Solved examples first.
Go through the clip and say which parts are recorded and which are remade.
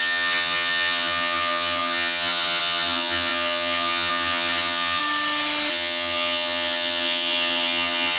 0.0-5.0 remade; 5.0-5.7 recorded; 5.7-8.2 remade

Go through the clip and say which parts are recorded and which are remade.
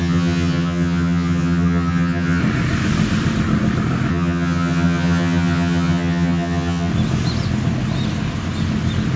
0.0-2.4 remade; 2.4-4.1 recorded; 4.1-6.9 remade; 6.9-9.2 recorded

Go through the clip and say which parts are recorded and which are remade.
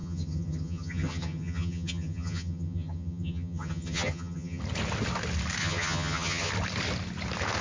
0.0-4.6 remade; 4.6-5.6 recorded; 5.6-6.5 remade; 6.5-7.6 recorded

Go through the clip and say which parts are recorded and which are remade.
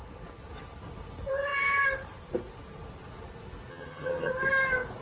0.0-3.7 recorded; 3.7-4.3 remade; 4.3-5.0 recorded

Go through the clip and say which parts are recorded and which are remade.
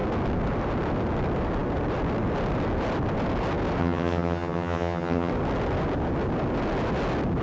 0.0-3.8 recorded; 3.8-5.3 remade; 5.3-7.4 recorded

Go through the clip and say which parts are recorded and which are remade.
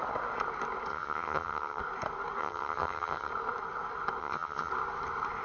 0.0-0.9 recorded; 0.9-1.8 remade; 1.8-2.4 recorded; 2.4-3.3 remade; 3.3-4.2 recorded; 4.2-4.7 remade; 4.7-5.4 recorded